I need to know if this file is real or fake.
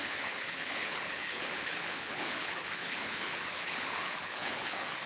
fake